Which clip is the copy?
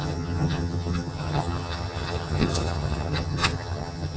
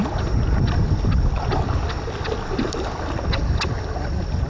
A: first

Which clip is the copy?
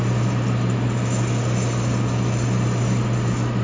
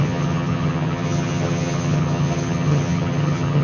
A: second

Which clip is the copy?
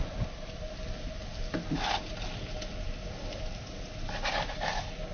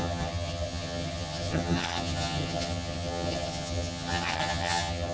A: second